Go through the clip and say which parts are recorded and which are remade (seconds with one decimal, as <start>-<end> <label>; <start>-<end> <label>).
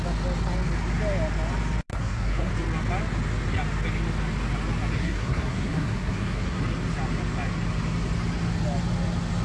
0.0-1.9 recorded; 1.9-2.5 remade; 2.5-5.0 recorded; 5.0-6.6 remade; 6.6-9.4 recorded